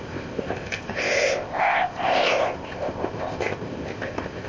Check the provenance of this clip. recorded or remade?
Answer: remade